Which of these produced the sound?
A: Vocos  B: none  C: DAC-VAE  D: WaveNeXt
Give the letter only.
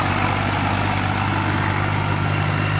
B